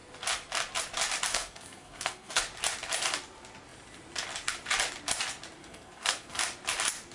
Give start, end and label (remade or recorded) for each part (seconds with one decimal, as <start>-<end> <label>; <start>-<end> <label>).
0.0-1.3 recorded; 1.3-2.4 remade; 2.4-5.6 recorded; 5.6-6.4 remade; 6.4-7.1 recorded